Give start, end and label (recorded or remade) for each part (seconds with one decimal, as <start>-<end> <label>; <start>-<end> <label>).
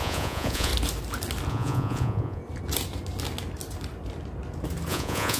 0.0-0.7 remade; 0.7-1.5 recorded; 1.5-2.4 remade; 2.4-4.9 recorded; 4.9-5.4 remade